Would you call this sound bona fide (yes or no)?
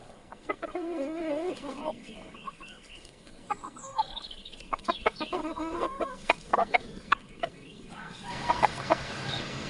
no